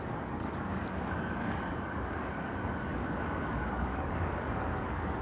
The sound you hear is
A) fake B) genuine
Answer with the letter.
A